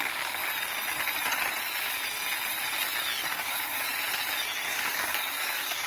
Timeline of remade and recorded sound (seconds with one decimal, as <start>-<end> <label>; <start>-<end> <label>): 0.0-0.4 remade; 0.4-3.3 recorded; 3.3-3.9 remade; 3.9-4.6 recorded; 4.6-5.9 remade